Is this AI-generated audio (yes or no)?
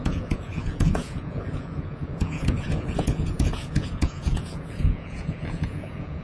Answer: yes